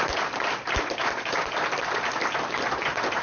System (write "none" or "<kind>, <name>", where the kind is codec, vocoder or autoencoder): none